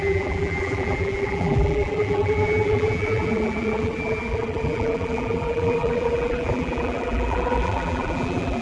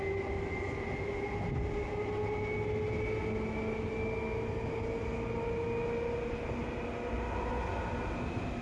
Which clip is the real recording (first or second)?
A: second